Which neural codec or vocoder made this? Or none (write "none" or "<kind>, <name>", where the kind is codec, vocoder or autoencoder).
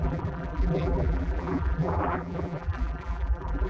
vocoder, BigVGAN v2